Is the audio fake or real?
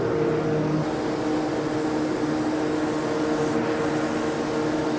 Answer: real